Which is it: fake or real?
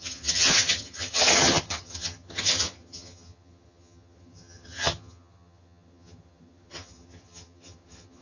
fake